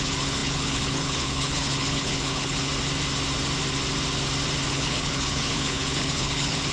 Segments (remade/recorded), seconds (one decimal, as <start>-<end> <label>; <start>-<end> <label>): 0.0-2.7 remade; 2.7-4.7 recorded; 4.7-6.7 remade